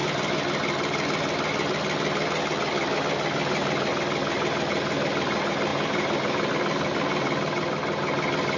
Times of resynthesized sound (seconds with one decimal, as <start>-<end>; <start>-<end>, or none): none